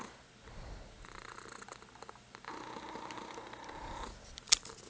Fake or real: real